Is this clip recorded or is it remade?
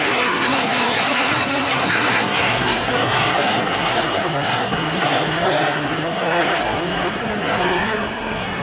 remade